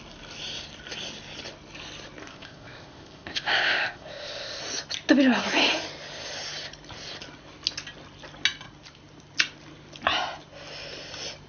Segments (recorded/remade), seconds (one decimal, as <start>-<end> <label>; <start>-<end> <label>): 0.0-2.2 recorded; 2.2-4.6 remade; 4.6-11.5 recorded